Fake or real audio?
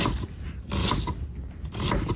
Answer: real